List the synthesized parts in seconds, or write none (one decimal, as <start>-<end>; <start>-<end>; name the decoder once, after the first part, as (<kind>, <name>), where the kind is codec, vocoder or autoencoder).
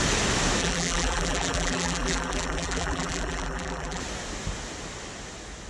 0.6-4.0 (vocoder, BigVGAN v2)